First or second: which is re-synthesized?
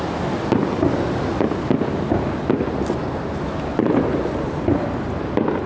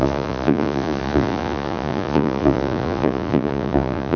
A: second